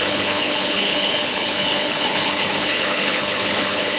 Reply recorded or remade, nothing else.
remade